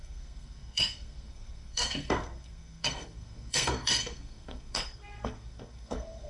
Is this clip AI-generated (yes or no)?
yes